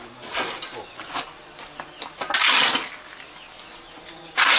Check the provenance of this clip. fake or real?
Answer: real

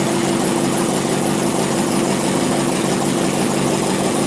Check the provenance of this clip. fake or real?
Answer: real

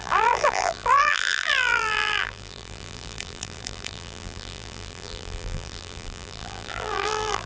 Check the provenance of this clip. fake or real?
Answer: fake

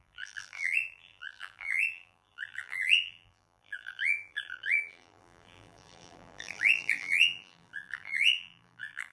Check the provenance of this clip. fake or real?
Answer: fake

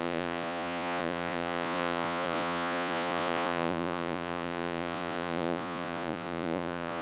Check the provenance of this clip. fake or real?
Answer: fake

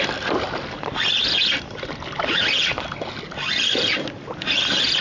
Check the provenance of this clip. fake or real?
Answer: real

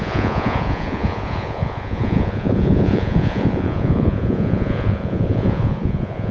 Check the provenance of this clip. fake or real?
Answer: fake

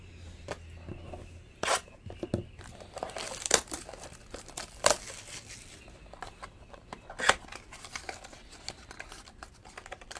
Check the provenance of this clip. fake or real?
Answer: real